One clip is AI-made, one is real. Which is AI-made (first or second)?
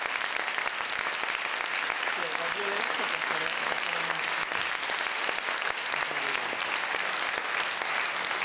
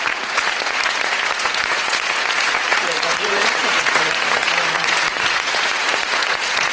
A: second